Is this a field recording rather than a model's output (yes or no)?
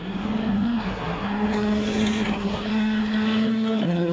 no